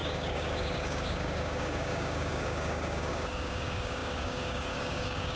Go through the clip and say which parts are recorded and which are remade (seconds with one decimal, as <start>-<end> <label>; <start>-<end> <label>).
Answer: 0.0-5.4 remade